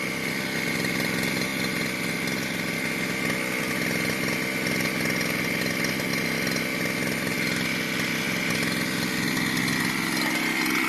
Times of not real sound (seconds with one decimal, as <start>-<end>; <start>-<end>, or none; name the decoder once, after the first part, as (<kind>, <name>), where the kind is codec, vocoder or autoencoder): none